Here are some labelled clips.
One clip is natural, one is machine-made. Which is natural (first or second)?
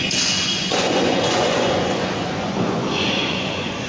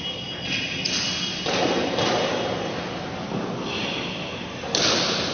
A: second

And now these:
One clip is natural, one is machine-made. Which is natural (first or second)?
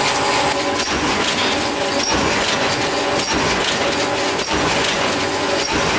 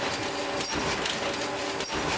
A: second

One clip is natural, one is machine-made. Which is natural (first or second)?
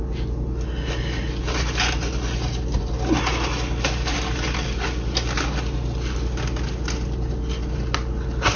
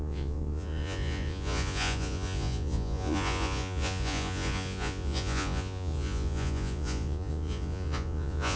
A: first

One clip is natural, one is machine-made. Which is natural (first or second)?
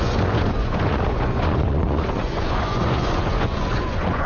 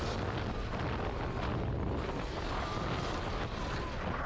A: second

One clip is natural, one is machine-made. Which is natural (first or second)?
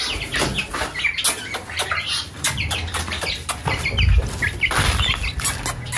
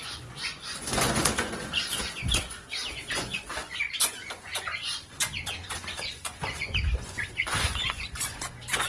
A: first